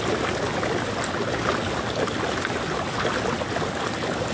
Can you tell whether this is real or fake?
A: real